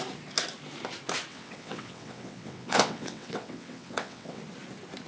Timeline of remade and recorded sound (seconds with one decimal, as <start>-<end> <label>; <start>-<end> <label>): 0.0-1.3 recorded; 1.3-4.4 remade; 4.4-5.1 recorded